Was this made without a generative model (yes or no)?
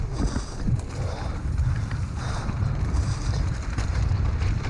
yes